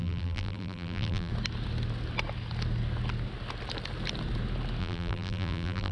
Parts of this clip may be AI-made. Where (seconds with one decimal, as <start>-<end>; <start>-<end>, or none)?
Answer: 0.0-1.3; 4.8-5.9